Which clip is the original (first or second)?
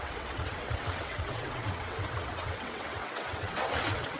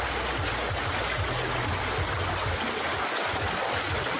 second